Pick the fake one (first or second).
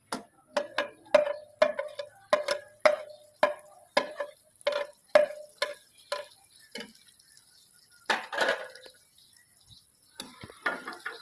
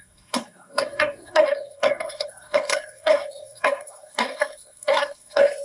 second